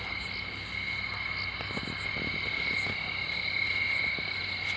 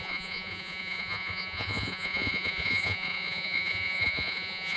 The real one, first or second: first